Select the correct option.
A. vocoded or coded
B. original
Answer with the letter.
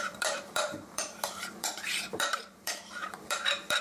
A